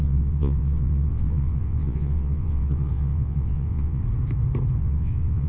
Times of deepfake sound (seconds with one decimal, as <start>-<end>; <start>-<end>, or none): 0.0-4.0; 4.8-5.5